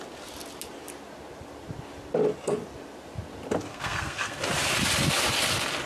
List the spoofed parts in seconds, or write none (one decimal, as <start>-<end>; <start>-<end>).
3.7-4.4